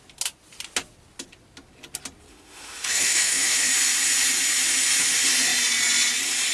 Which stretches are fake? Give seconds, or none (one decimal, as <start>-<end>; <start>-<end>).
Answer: 2.3-3.7